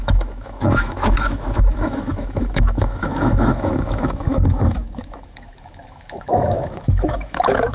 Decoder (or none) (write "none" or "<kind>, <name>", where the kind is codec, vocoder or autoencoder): autoencoder, DAC-VAE